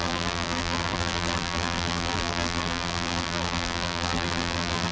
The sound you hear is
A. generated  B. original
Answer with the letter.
A